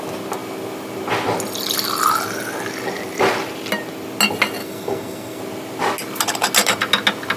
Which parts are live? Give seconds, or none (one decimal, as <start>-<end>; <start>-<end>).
0.0-4.6; 5.4-7.4

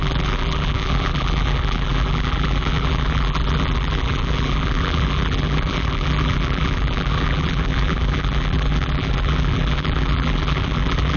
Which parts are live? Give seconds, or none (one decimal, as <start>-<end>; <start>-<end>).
none

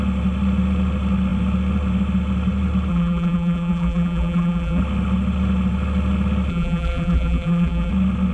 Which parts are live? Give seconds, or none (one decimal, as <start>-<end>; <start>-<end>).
0.0-2.9; 4.8-6.5; 7.9-8.3